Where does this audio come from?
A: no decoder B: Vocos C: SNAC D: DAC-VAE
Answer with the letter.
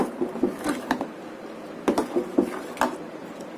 A